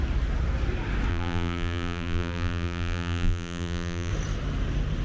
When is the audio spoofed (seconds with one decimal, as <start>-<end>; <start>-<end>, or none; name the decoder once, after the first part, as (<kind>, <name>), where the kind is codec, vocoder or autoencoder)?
1.1-4.1 (vocoder, BigVGAN v2)